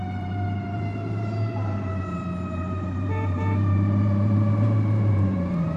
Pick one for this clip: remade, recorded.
remade